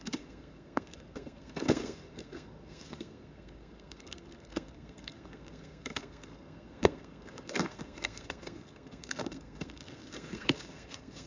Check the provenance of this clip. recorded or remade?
remade